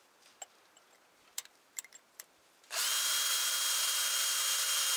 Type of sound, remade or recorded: remade